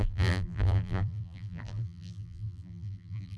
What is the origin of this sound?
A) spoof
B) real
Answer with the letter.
A